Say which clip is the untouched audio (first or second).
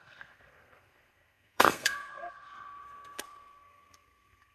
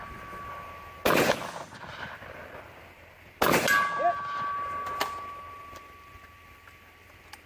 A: second